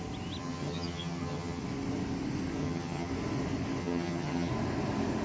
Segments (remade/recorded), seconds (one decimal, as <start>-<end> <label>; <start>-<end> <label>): 0.0-0.4 recorded; 0.4-1.6 remade; 1.6-2.6 recorded; 2.6-3.1 remade; 3.1-3.8 recorded; 3.8-4.5 remade; 4.5-5.2 recorded